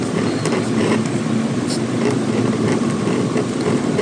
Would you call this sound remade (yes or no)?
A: no